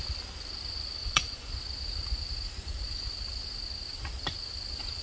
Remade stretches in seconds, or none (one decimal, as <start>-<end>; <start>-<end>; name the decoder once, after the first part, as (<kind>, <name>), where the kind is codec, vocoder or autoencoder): 1.0-1.5 (vocoder, Vocos)